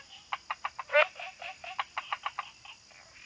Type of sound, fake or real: real